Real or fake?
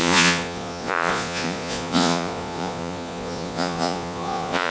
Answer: fake